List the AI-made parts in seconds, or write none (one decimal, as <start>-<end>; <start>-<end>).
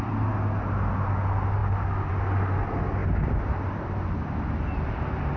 none